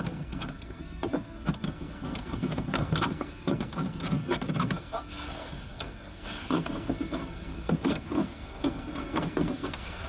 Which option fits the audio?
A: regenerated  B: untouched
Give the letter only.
A